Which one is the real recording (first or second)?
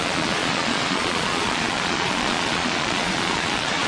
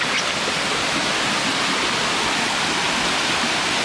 second